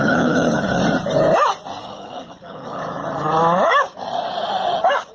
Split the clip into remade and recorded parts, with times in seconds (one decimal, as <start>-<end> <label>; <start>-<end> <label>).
0.0-0.8 remade; 0.8-1.8 recorded; 1.8-2.8 remade; 2.8-5.1 recorded